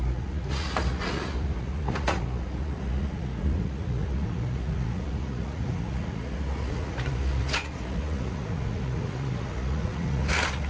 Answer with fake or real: fake